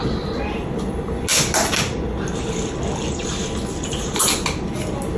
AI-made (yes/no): no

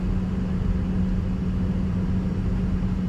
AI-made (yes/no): no